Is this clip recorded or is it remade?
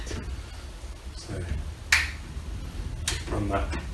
recorded